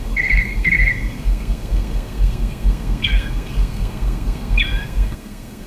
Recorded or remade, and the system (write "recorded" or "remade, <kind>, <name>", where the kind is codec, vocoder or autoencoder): remade, codec, SNAC